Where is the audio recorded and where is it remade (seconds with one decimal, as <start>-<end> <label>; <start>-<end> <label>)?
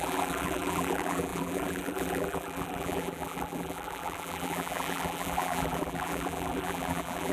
0.0-7.3 remade